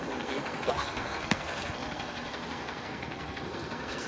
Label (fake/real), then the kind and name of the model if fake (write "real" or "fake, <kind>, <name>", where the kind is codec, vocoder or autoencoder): fake, codec, SNAC